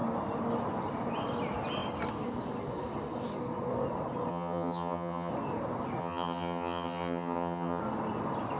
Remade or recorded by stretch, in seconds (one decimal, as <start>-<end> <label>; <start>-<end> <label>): 0.0-4.3 recorded; 4.3-5.3 remade; 5.3-6.0 recorded; 6.0-7.8 remade; 7.8-8.6 recorded